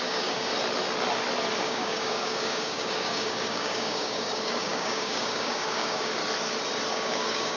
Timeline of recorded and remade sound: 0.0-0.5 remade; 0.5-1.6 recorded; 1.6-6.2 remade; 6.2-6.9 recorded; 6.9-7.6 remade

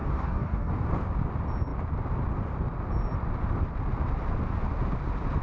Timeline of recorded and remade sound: 0.0-0.7 remade; 0.7-5.4 recorded